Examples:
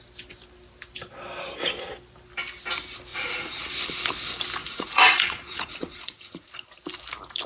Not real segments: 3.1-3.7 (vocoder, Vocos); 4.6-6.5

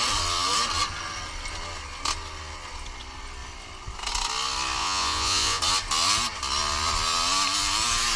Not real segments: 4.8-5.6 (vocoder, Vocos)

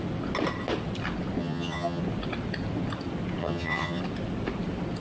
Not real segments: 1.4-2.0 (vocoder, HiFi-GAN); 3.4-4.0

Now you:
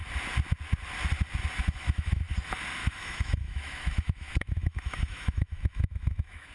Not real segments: 1.6-2.2 (autoencoder, DAC-VAE); 2.8-6.5

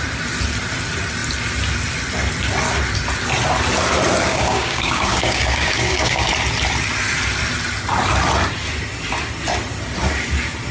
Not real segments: 4.3-6.3 (codec, DAC)

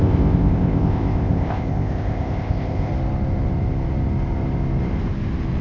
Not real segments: 0.0-2.9 (codec, ZipCodec)

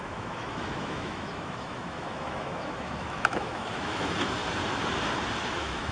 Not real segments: 0.0-4.4 (autoencoder, DAC-VAE); 5.5-5.9

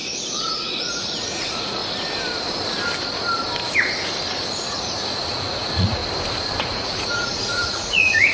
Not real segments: 0.0-1.8 (vocoder, Vocos); 4.6-6.0; 6.6-8.3